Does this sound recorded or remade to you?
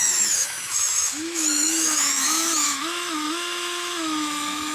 remade